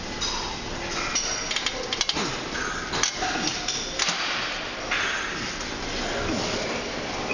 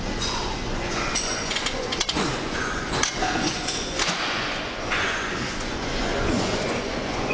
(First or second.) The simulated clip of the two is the second